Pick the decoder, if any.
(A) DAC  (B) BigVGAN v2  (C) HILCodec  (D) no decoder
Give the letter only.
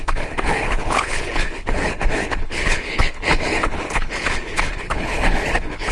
C